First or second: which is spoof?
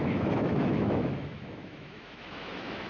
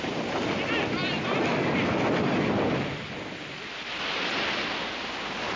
first